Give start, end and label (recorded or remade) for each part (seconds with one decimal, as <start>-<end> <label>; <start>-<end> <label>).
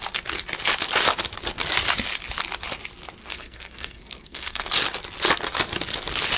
0.0-3.2 recorded; 3.2-4.7 remade; 4.7-6.4 recorded